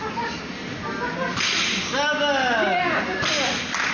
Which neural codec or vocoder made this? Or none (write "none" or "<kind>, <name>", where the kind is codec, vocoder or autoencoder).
none